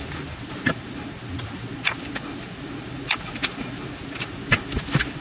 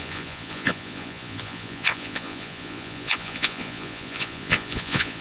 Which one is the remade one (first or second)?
second